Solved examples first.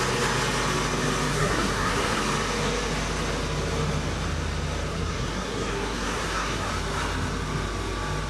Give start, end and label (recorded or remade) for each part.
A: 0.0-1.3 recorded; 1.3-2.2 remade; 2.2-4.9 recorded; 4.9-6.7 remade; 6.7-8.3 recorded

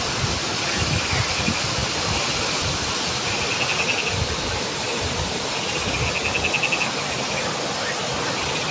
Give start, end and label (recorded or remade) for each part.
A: 0.0-8.7 recorded

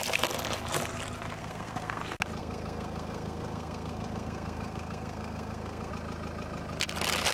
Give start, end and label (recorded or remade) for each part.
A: 0.0-1.4 recorded; 1.4-2.0 remade; 2.0-2.4 recorded; 2.4-5.9 remade; 5.9-7.3 recorded

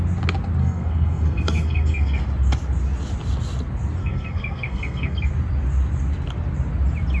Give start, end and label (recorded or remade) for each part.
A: 0.0-0.6 recorded; 0.6-2.2 remade; 2.2-4.0 recorded; 4.0-5.3 remade; 5.3-7.2 recorded

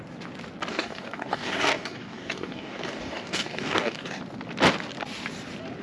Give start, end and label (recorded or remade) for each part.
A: 0.0-0.7 recorded; 0.7-4.2 remade; 4.2-5.8 recorded

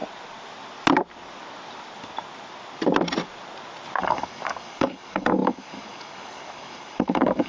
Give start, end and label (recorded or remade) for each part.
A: 0.0-4.0 recorded; 4.0-7.5 remade

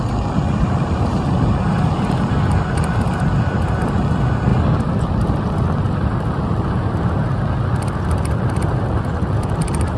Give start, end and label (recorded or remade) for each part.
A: 0.0-10.0 recorded

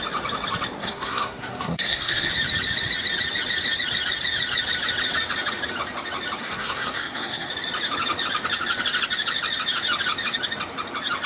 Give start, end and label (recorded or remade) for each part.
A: 0.0-0.8 recorded; 0.8-2.3 remade; 2.3-6.4 recorded; 6.4-7.5 remade; 7.5-11.3 recorded